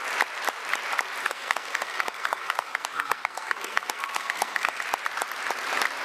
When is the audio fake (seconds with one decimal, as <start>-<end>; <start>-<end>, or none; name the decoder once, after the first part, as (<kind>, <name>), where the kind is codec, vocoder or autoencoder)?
1.2-4.8 (codec, SNAC)